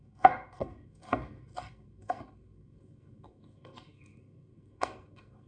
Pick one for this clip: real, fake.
fake